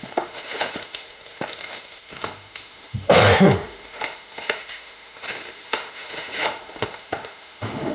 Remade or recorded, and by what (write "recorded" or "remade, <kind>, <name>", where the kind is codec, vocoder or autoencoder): remade, autoencoder, DAC-VAE